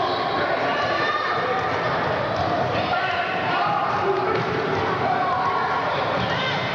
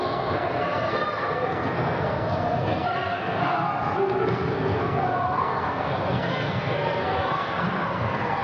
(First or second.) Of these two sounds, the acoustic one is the first